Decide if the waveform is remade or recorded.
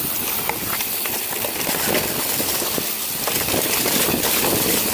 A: recorded